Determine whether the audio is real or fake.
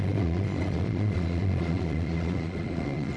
fake